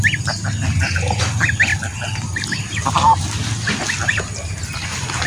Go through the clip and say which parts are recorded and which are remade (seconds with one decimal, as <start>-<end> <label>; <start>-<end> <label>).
0.0-5.3 recorded